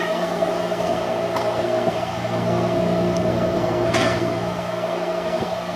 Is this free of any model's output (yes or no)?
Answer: no